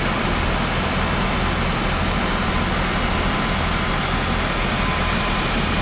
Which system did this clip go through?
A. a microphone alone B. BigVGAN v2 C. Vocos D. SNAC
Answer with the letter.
A